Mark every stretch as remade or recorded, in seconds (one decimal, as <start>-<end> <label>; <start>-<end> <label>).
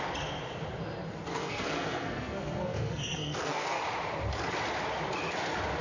0.0-1.3 recorded; 1.3-3.8 remade; 3.8-5.8 recorded